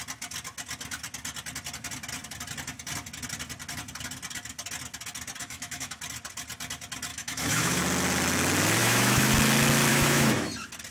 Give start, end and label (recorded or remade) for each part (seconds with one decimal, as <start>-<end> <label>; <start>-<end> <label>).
0.0-5.4 recorded; 5.4-6.0 remade; 6.0-7.1 recorded; 7.1-7.8 remade; 7.8-8.8 recorded; 8.8-9.3 remade; 9.3-9.9 recorded; 9.9-10.5 remade; 10.5-10.9 recorded

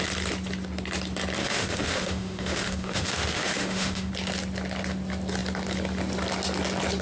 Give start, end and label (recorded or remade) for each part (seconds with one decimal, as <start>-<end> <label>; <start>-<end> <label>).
0.0-1.4 recorded; 1.4-4.1 remade; 4.1-7.0 recorded

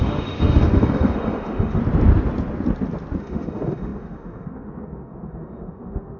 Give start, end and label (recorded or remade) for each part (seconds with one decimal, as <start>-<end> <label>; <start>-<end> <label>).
0.0-1.8 remade; 1.8-3.2 recorded; 3.2-6.2 remade

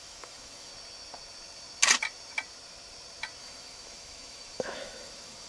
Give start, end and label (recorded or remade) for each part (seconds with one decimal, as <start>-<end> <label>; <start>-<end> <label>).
0.0-0.7 remade; 0.7-3.4 recorded; 3.4-5.5 remade

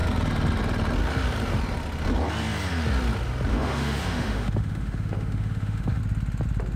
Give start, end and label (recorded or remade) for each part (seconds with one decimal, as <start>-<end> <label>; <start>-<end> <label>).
0.0-3.5 recorded; 3.5-6.0 remade; 6.0-6.8 recorded

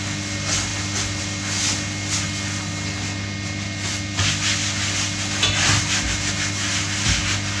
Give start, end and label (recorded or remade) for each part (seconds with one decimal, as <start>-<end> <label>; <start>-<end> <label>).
0.0-7.6 recorded

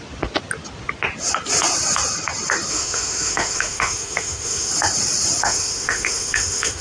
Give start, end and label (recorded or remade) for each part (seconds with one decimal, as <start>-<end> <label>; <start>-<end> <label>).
0.0-2.7 recorded; 2.7-4.7 remade; 4.7-5.4 recorded; 5.4-6.8 remade

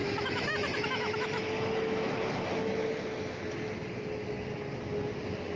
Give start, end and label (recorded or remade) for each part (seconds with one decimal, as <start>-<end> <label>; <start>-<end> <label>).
0.0-3.4 remade; 3.4-5.6 recorded